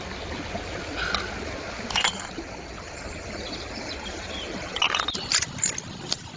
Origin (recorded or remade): recorded